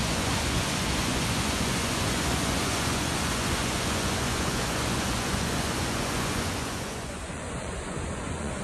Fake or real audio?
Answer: fake